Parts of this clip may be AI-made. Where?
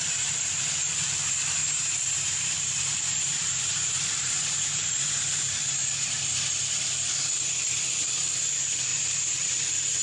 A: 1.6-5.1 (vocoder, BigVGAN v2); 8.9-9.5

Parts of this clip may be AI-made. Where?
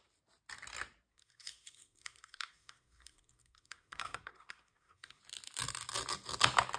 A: 1.1-5.2 (codec, SNAC)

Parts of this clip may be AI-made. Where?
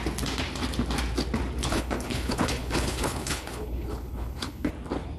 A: 1.6-4.7 (codec, HILCodec)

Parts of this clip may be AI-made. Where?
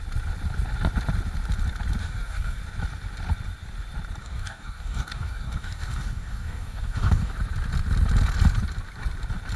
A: 2.0-2.6 (codec, DAC); 4.2-7.3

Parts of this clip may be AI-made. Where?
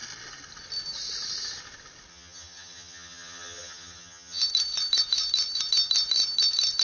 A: 2.1-4.4 (vocoder, HiFi-GAN)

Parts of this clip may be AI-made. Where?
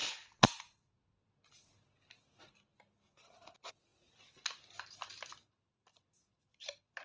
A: 5.4-7.0 (vocoder, BigVGAN v2)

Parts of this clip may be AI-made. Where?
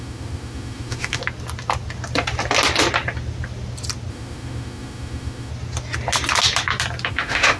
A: 0.0-1.2 (autoencoder, DAC-VAE); 4.1-5.5; 7.1-7.6